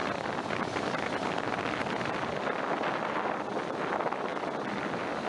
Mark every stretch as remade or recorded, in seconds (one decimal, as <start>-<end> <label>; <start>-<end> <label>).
0.0-1.1 remade; 1.1-5.3 recorded